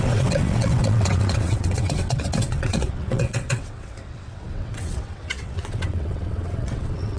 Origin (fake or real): fake